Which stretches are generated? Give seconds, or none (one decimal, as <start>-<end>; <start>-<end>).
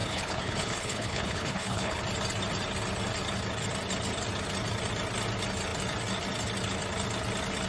0.0-2.0